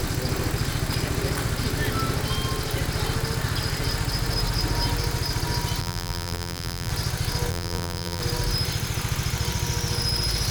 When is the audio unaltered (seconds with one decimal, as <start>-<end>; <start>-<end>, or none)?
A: 0.0-5.8; 6.9-7.5; 8.2-10.5